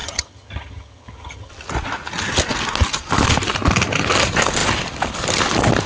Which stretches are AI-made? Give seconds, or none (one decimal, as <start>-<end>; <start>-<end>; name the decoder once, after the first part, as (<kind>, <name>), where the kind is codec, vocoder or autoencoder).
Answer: 0.0-1.5 (vocoder, HiFi-GAN)